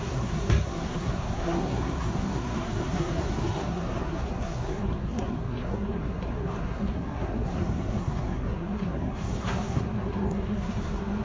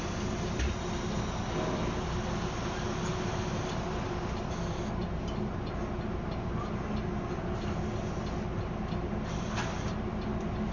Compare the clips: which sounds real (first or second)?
second